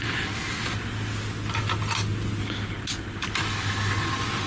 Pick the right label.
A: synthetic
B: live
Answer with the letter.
B